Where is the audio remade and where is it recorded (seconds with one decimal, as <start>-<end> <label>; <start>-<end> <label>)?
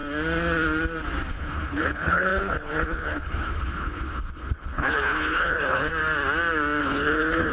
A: 0.0-1.3 recorded; 1.3-5.9 remade; 5.9-6.8 recorded; 6.8-7.5 remade